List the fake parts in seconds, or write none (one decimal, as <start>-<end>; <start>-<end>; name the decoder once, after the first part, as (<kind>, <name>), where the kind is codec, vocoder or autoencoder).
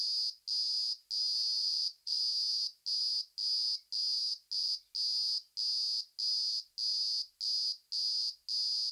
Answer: 1.6-2.2 (vocoder, BigVGAN v2)